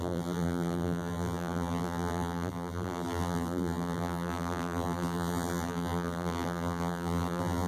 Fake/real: fake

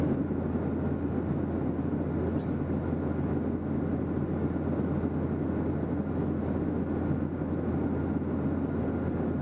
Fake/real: real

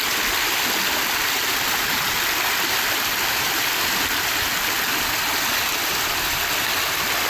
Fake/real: real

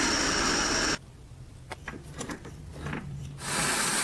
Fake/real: real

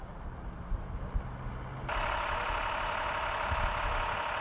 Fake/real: real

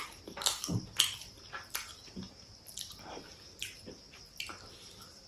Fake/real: fake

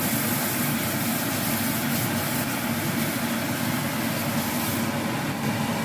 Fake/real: real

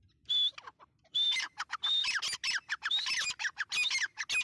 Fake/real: real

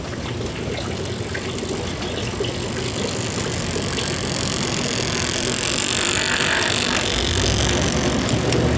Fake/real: real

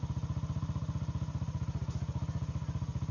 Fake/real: real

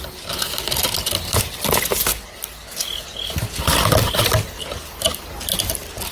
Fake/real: real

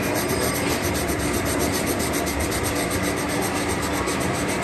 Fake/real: fake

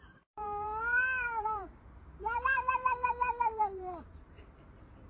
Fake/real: fake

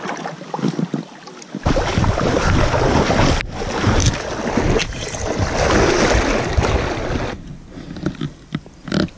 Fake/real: real